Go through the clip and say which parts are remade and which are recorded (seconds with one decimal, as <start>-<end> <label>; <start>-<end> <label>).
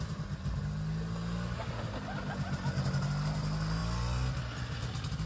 0.0-5.3 recorded